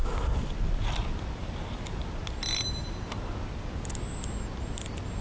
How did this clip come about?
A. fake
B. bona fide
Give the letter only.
B